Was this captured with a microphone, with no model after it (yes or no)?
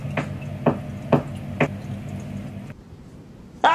yes